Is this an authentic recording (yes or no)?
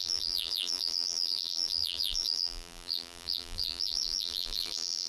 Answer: no